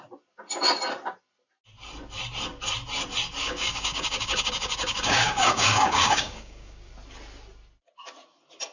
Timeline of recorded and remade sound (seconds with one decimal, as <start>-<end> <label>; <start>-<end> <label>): 0.0-3.4 recorded; 3.4-6.9 remade; 6.9-8.7 recorded